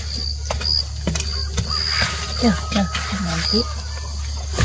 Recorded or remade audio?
recorded